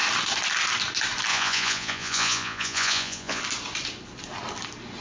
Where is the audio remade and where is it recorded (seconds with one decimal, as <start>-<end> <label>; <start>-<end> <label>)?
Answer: 0.0-1.3 recorded; 1.3-3.4 remade; 3.4-5.0 recorded